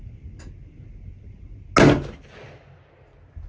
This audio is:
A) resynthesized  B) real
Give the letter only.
B